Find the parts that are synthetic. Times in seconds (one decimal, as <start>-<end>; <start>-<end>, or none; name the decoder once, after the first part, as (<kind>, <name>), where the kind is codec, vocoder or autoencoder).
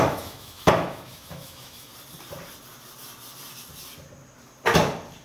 0.0-1.9 (autoencoder, DAC-VAE)